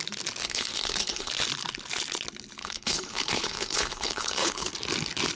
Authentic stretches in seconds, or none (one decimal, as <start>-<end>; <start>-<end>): 0.0-0.4; 1.3-2.6; 4.7-5.4